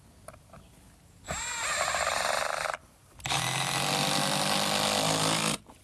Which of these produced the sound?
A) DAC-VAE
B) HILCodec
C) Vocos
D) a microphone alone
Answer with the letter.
D